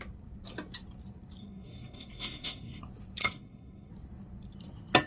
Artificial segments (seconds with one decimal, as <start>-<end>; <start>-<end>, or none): 1.4-2.8; 3.2-3.9